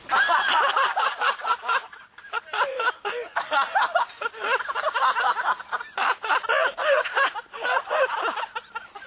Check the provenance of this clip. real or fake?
real